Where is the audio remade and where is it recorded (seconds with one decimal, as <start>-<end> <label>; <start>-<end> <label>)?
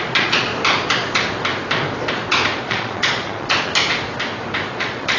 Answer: 0.0-0.5 remade; 0.5-2.6 recorded; 2.6-3.7 remade; 3.7-4.7 recorded; 4.7-5.2 remade